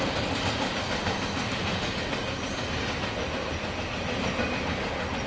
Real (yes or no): yes